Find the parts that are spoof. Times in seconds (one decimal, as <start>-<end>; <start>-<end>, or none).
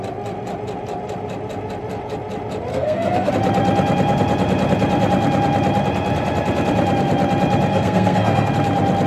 2.7-3.3; 7.7-8.5